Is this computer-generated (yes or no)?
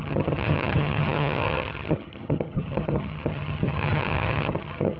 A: yes